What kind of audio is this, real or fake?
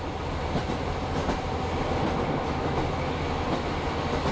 real